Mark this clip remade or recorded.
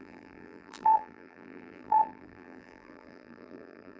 remade